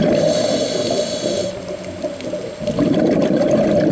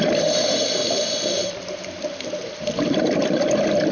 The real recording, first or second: first